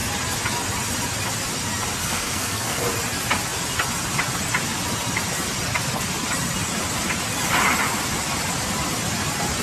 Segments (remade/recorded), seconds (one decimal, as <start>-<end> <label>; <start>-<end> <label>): 0.0-2.0 recorded; 2.0-2.8 remade; 2.8-9.6 recorded